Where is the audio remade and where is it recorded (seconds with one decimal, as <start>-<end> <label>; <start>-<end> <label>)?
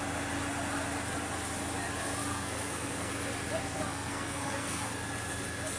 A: 0.0-2.3 recorded; 2.3-3.1 remade; 3.1-3.6 recorded; 3.6-4.9 remade; 4.9-5.8 recorded